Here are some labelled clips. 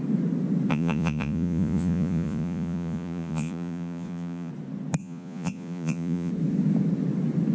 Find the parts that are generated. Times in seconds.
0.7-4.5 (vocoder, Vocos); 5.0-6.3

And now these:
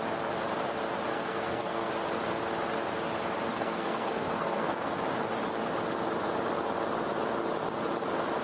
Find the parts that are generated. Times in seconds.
1.1-1.9 (codec, SNAC); 3.5-5.0

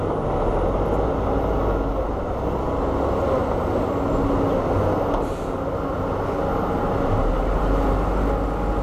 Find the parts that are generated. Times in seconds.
none